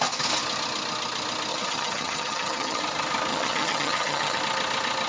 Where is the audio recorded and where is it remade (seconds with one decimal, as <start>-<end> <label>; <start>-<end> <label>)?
0.0-1.5 recorded; 1.5-2.8 remade; 2.8-3.3 recorded; 3.3-4.4 remade; 4.4-5.1 recorded